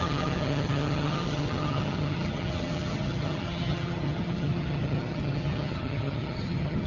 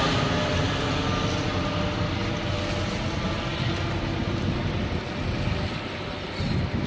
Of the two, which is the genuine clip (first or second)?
second